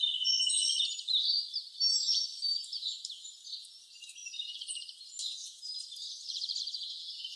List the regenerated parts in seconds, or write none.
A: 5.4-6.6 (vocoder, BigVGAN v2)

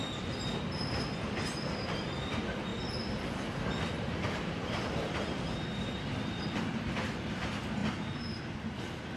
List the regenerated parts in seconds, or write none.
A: 2.7-7.3 (vocoder, BigVGAN v2); 7.8-8.4

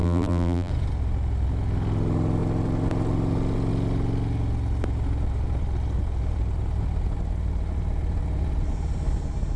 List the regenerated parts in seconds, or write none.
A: 0.0-0.7 (vocoder, BigVGAN v2)

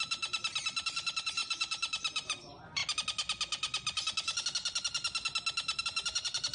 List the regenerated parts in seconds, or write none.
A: 0.0-2.8 (vocoder, BigVGAN v2); 5.8-6.5

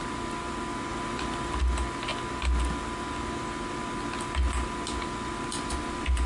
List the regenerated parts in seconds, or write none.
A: none

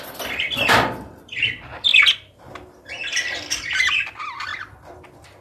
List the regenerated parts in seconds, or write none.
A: 0.0-1.9 (vocoder, BigVGAN v2); 2.9-5.4